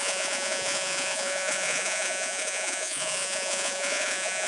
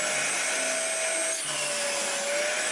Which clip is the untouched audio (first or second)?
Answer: second